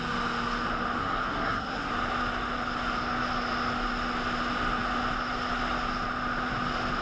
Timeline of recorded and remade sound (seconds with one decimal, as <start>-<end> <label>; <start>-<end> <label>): 0.0-1.0 recorded; 1.0-1.9 remade; 1.9-7.0 recorded